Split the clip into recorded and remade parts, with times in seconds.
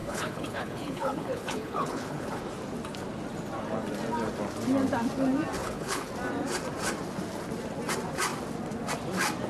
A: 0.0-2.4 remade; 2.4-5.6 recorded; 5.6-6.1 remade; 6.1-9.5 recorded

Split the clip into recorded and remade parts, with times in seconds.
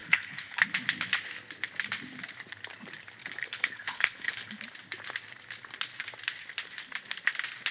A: 0.0-0.6 remade; 0.6-3.2 recorded; 3.2-4.6 remade; 4.6-7.7 recorded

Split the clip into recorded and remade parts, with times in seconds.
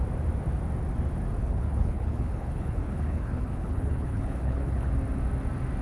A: 0.0-1.4 recorded; 1.4-4.9 remade; 4.9-5.8 recorded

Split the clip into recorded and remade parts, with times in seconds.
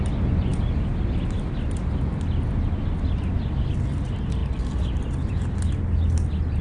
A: 0.0-6.6 recorded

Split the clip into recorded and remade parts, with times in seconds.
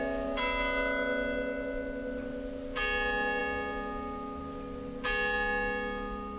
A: 0.0-6.4 recorded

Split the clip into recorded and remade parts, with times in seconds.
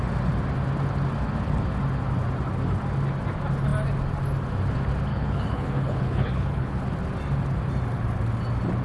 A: 0.0-5.1 recorded; 5.1-6.8 remade; 6.8-8.8 recorded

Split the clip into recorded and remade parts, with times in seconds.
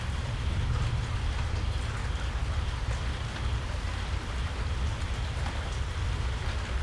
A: 0.0-6.8 recorded